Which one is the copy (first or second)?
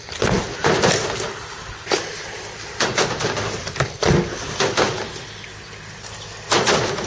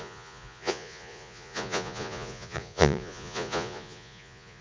second